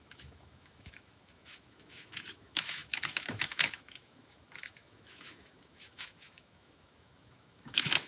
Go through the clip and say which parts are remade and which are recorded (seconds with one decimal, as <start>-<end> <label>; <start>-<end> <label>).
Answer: 0.0-8.1 remade